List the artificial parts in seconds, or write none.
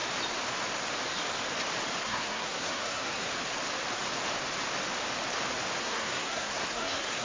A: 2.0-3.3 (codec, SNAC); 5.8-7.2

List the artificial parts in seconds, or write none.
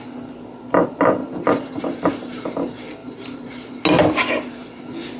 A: 1.2-1.8 (vocoder, BigVGAN v2); 3.0-3.7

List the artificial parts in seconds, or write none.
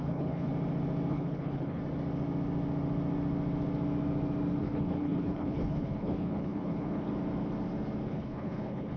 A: 0.0-0.5 (codec, HILCodec); 1.1-1.8; 4.6-7.1; 8.0-9.0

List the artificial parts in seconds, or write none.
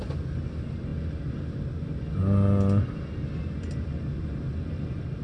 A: none